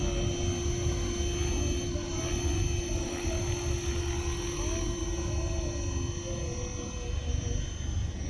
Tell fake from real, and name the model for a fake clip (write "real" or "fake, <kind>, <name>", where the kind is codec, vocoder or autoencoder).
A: real